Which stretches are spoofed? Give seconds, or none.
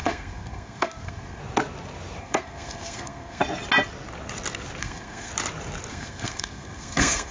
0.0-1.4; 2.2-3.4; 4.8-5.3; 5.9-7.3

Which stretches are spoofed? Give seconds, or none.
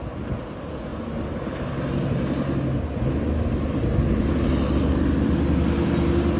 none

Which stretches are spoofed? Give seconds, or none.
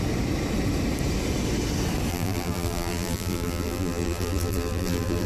2.1-5.3